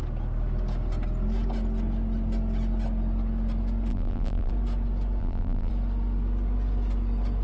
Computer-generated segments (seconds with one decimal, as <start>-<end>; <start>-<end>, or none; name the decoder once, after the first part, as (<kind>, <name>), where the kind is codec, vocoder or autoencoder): 3.9-4.5 (vocoder, BigVGAN v2); 5.2-5.7